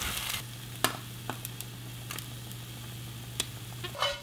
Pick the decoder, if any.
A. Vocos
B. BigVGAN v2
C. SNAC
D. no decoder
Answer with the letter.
D